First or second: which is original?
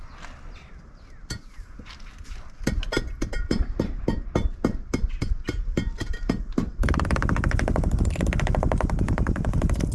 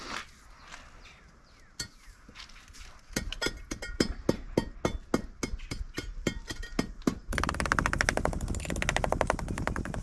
second